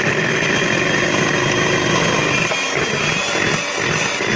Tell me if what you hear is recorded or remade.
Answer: recorded